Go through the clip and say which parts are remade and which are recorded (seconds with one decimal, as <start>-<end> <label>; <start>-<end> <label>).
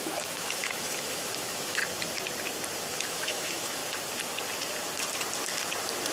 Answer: 0.0-1.8 remade; 1.8-2.9 recorded; 2.9-3.8 remade; 3.8-6.1 recorded